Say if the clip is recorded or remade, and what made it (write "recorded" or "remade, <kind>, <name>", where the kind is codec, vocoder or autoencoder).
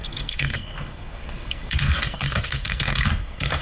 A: remade, codec, SNAC